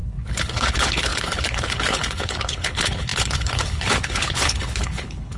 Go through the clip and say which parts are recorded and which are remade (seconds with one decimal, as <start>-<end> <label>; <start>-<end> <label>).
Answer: 0.0-5.4 remade